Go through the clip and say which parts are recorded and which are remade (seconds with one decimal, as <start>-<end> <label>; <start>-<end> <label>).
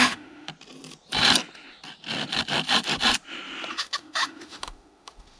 0.0-0.5 remade; 0.5-3.7 recorded; 3.7-5.4 remade